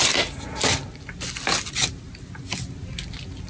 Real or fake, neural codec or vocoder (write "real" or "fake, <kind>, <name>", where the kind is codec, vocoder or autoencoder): real